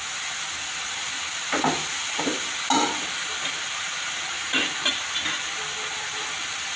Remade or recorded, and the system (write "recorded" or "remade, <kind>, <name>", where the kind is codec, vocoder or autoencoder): recorded